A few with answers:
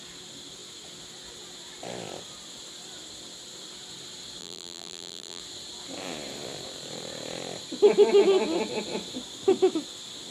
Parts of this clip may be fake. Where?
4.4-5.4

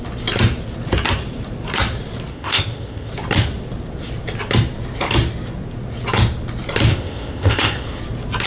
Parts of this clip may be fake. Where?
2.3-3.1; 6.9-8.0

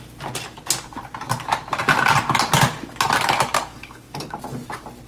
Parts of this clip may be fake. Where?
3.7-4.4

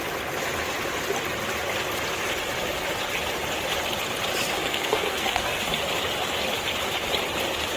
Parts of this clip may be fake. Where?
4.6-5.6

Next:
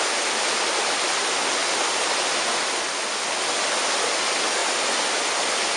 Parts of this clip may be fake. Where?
none

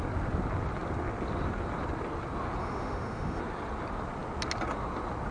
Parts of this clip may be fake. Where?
2.6-3.4

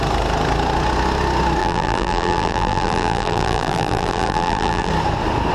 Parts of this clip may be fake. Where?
1.6-4.9